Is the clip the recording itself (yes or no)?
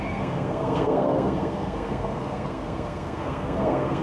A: no